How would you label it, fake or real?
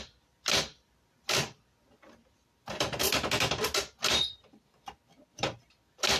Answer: real